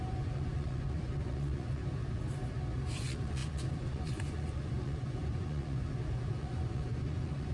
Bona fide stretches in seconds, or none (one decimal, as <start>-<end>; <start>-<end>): 1.8-2.9